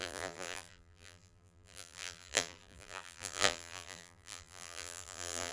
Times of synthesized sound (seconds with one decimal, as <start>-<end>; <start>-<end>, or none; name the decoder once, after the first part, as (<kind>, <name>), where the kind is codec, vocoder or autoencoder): 0.0-5.5 (vocoder, BigVGAN v2)